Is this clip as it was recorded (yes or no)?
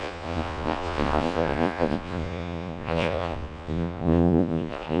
no